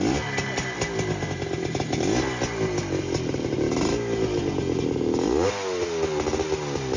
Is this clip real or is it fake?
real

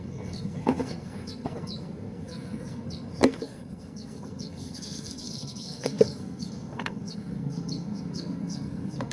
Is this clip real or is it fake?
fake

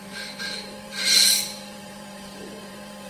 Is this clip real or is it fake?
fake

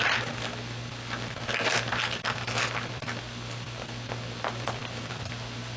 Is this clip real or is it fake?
real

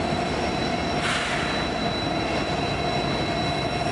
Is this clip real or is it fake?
real